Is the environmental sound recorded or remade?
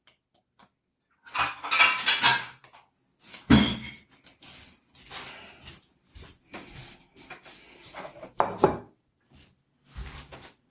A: recorded